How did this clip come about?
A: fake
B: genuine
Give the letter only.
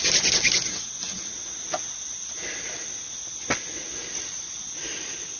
B